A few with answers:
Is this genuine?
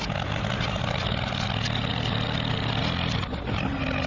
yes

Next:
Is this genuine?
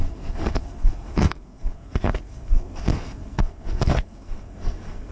no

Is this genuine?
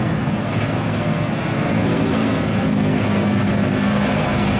no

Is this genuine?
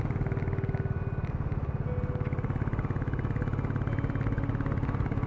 yes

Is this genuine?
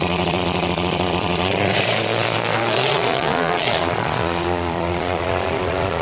no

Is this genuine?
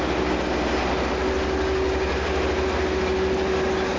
yes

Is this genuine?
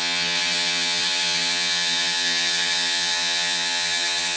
no